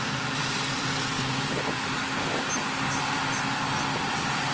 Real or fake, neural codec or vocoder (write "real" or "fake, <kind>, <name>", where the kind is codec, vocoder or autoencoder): real